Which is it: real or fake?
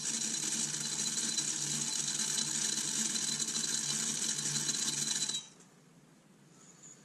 real